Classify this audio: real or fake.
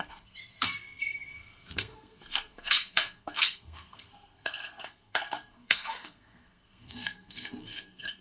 fake